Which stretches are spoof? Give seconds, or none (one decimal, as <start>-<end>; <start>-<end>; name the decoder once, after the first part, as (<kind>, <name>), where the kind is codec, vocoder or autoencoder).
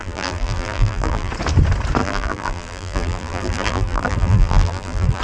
0.0-1.3 (vocoder, BigVGAN v2); 2.0-5.2